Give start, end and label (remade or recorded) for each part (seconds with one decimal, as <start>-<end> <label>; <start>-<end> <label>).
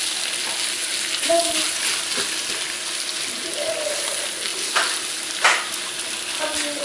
0.0-6.8 recorded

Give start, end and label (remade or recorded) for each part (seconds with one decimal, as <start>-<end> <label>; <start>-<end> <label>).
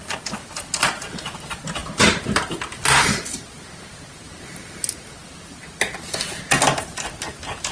0.0-7.7 recorded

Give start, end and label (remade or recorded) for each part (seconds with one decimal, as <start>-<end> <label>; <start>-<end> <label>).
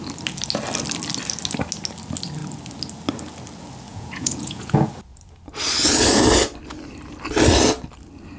0.0-3.9 recorded; 3.9-4.9 remade; 4.9-8.4 recorded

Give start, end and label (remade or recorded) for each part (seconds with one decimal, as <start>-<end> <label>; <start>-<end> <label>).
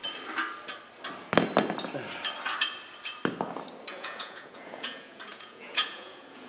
0.0-3.9 recorded; 3.9-6.5 remade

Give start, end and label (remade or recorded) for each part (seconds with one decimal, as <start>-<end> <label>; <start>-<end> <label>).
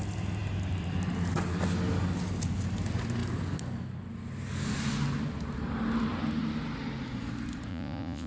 0.0-7.7 recorded; 7.7-8.3 remade